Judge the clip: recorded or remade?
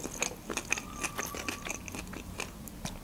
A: recorded